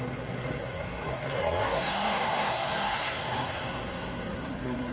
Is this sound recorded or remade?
remade